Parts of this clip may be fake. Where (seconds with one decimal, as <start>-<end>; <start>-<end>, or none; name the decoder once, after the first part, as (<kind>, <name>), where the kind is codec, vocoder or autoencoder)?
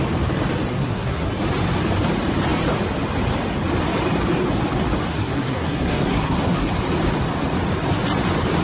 0.7-1.3 (codec, SNAC); 5.1-6.7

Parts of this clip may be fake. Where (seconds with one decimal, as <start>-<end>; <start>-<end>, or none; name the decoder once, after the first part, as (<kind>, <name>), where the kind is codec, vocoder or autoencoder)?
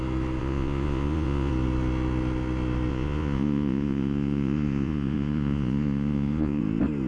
0.4-1.5 (vocoder, Vocos); 2.9-6.6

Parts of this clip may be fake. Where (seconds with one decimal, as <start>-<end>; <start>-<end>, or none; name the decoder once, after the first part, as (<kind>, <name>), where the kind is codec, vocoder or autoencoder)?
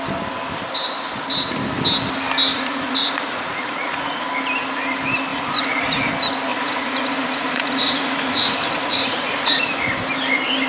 2.5-4.2 (vocoder, Vocos); 5.3-6.1; 6.5-9.6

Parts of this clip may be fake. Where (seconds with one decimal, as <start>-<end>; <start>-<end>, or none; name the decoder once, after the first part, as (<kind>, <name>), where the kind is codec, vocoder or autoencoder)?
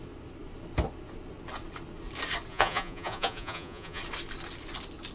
2.5-4.0 (vocoder, Vocos)